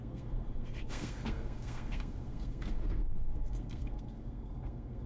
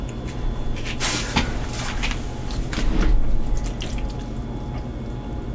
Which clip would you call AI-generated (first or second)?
first